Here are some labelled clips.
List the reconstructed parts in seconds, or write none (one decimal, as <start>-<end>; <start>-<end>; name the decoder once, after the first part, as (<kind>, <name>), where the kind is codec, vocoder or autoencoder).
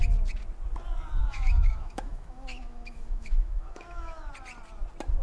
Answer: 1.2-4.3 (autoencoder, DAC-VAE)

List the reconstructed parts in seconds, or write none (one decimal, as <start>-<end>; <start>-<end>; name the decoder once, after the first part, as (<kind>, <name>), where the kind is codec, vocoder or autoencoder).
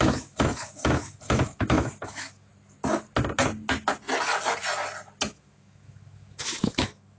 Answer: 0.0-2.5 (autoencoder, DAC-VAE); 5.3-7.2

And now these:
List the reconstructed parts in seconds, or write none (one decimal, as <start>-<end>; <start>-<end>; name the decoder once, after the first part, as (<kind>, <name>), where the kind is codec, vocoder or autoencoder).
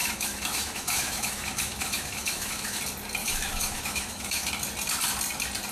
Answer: 0.0-2.8 (autoencoder, DAC-VAE); 3.2-4.5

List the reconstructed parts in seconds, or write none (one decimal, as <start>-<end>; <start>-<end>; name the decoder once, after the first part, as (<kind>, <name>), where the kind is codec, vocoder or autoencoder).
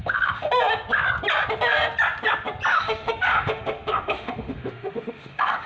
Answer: 0.0-0.5 (autoencoder, DAC-VAE); 2.7-5.7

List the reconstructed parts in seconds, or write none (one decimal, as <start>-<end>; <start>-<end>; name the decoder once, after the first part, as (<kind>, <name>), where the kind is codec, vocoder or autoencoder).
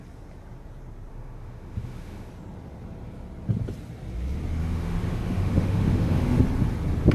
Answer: 1.1-2.3 (autoencoder, DAC-VAE); 4.6-6.4